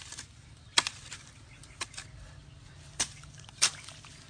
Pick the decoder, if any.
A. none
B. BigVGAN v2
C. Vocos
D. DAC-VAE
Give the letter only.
A